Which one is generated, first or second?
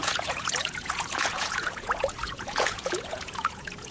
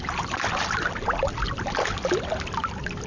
first